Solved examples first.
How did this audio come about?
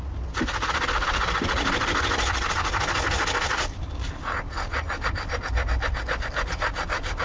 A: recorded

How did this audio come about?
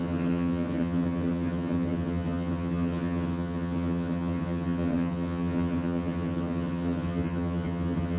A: remade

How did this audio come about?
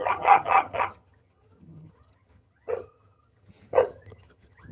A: remade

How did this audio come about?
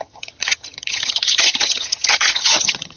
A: remade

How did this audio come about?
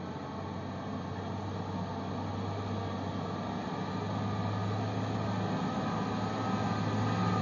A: recorded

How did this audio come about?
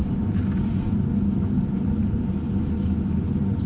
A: recorded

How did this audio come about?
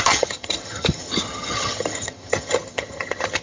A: remade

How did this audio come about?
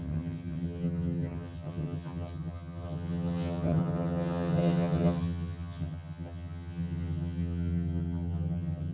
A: remade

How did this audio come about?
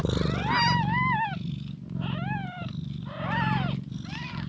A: recorded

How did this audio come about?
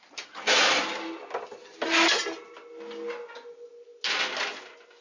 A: recorded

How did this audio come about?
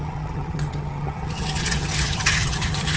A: remade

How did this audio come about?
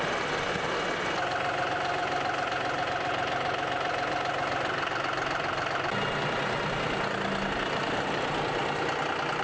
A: recorded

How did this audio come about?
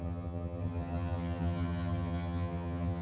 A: remade